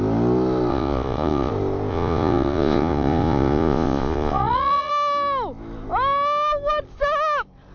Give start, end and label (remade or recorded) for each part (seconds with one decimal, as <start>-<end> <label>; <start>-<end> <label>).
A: 0.0-0.7 recorded; 0.7-1.5 remade; 1.5-1.9 recorded; 1.9-4.9 remade; 4.9-7.7 recorded